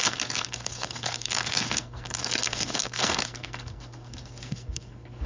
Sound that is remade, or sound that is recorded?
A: remade